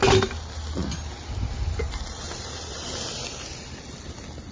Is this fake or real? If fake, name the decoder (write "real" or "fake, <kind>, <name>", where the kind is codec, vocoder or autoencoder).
real